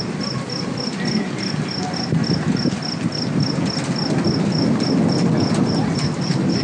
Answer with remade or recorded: recorded